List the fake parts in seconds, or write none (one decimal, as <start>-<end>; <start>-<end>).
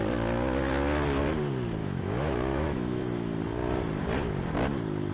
1.8-3.0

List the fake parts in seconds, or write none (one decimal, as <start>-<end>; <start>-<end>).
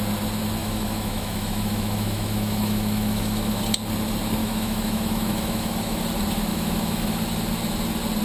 0.6-3.6; 4.4-6.0; 6.5-7.2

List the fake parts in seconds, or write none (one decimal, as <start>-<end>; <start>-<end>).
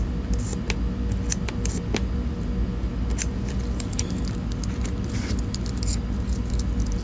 none